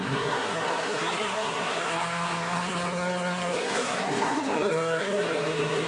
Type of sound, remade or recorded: remade